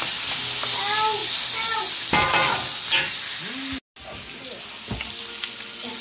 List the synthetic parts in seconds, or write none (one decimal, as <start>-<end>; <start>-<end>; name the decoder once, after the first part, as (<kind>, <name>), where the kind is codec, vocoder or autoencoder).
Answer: none